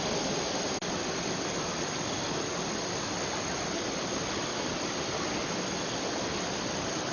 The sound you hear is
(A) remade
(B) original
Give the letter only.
B